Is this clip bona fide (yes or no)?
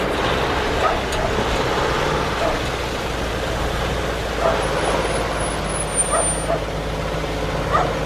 yes